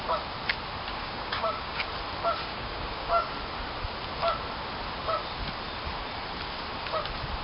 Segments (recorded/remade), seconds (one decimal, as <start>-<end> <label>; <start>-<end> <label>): 0.0-0.9 recorded; 0.9-1.8 remade; 1.8-2.4 recorded; 2.4-3.3 remade; 3.3-7.4 recorded